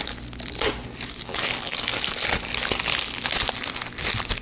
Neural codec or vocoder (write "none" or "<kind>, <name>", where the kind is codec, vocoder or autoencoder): none